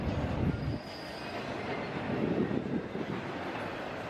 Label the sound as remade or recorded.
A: recorded